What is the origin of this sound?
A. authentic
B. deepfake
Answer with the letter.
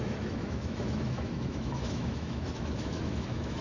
B